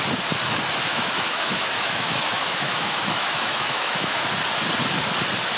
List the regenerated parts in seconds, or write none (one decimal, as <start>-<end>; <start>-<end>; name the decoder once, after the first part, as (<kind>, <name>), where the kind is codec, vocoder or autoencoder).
0.9-4.3 (autoencoder, DAC-VAE)